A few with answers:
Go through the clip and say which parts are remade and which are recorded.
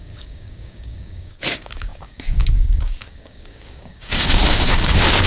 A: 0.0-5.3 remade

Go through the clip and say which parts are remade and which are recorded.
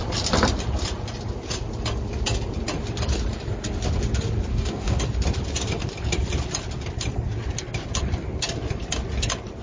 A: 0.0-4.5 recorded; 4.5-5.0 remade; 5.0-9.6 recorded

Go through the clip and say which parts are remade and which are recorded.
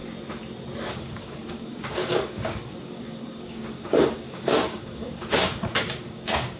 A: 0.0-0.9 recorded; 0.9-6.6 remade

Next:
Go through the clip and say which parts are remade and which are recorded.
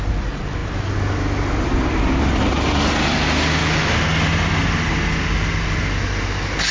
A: 0.0-6.7 recorded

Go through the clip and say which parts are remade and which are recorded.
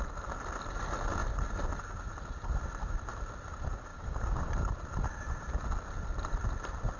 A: 0.0-3.9 recorded; 3.9-4.5 remade; 4.5-7.0 recorded